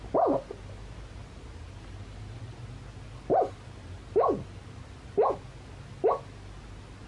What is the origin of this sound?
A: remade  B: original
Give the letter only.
B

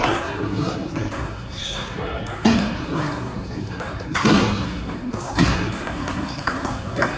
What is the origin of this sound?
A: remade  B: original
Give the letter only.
A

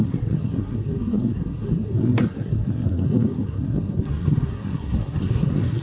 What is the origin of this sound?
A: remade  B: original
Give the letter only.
A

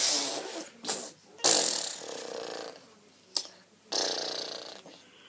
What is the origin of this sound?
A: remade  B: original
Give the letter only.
B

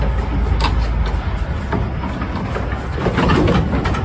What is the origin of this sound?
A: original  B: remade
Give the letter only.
A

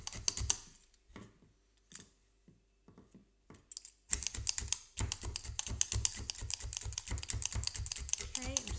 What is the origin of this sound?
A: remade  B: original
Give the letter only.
B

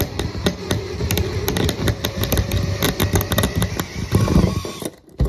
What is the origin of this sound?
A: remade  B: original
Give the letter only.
B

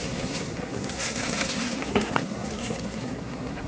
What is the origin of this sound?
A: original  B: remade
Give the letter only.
B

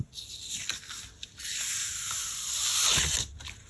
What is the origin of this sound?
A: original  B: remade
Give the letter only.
A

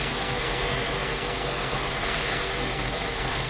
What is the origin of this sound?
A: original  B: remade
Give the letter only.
B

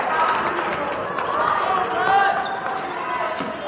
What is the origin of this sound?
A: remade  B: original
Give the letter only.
B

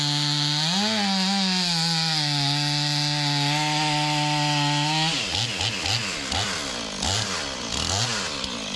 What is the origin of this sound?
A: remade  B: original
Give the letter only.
B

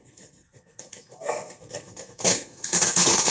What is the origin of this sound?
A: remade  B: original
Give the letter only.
A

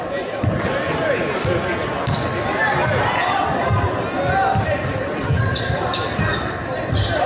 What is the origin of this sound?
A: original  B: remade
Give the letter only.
A